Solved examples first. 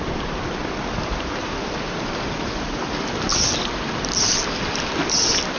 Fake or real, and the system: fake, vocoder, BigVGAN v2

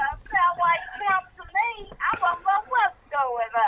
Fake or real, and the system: real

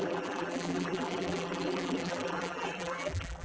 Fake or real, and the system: fake, vocoder, BigVGAN v2